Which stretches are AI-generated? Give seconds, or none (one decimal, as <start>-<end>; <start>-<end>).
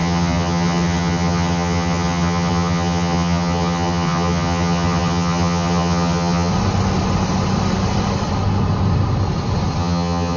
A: 0.0-6.5; 9.8-10.4